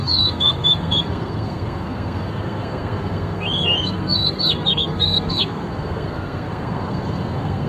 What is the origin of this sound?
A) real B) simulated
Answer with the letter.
B